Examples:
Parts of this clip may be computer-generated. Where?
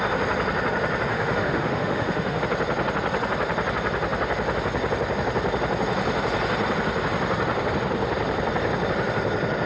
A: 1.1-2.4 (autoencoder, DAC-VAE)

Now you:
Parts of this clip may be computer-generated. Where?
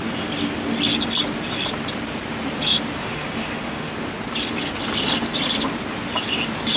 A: 3.0-3.9 (autoencoder, DAC-VAE)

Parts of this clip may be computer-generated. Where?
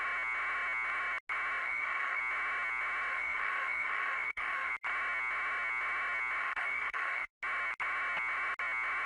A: 1.6-2.2 (autoencoder, DAC-VAE); 3.1-4.7; 6.4-7.3